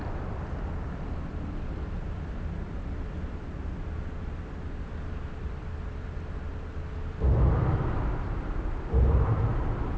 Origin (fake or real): fake